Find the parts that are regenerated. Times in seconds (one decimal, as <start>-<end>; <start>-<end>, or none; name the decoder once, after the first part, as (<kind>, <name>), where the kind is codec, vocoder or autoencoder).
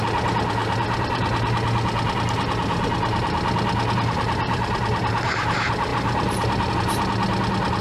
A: none